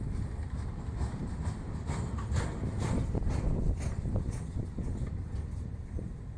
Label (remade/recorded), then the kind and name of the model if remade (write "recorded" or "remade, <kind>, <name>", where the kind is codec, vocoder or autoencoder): recorded